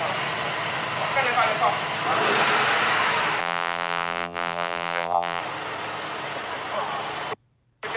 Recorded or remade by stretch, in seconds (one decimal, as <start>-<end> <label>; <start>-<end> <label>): 0.0-3.4 recorded; 3.4-5.4 remade; 5.4-8.0 recorded